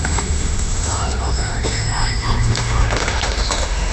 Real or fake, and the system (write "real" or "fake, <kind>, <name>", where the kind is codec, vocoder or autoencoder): fake, autoencoder, DAC-VAE